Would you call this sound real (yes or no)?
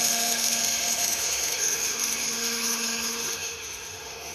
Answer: no